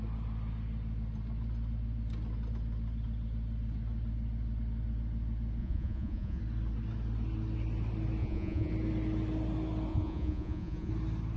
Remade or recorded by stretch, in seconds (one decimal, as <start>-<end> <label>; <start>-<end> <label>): 0.0-5.6 recorded; 5.6-6.4 remade; 6.4-8.2 recorded; 8.2-8.7 remade; 8.7-9.9 recorded; 9.9-10.9 remade; 10.9-11.4 recorded